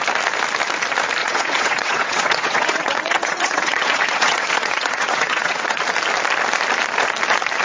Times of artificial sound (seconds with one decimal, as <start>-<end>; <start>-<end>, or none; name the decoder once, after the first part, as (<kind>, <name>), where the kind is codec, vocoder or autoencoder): 1.2-5.8 (vocoder, WaveNeXt)